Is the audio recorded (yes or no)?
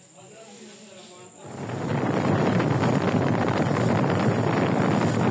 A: yes